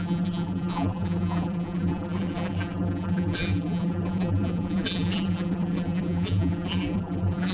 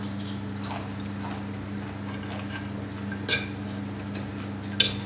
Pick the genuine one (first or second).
second